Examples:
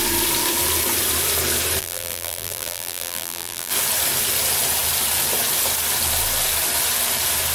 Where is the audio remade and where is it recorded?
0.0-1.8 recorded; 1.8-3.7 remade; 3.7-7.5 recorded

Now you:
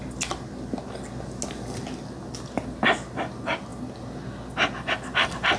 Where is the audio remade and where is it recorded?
0.0-5.6 recorded